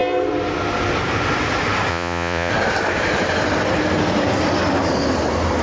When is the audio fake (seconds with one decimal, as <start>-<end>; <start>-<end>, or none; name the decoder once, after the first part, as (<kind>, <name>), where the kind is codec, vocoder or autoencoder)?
1.9-2.5 (vocoder, Vocos)